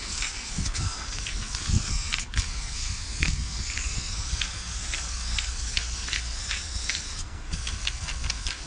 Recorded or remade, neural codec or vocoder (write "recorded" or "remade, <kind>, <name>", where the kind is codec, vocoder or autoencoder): remade, codec, SNAC